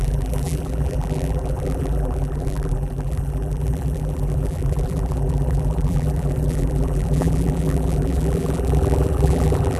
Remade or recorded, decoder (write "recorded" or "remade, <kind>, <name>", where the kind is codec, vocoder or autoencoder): remade, vocoder, BigVGAN v2